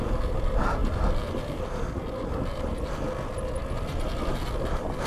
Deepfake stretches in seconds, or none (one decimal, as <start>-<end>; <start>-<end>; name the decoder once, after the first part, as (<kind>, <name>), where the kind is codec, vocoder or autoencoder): none